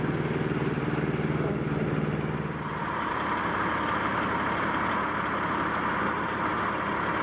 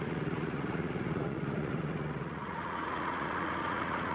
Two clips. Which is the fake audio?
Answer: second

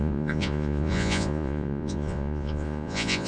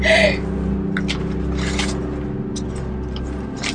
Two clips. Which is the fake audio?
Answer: first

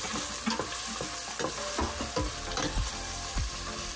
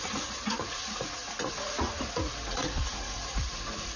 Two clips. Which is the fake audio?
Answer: second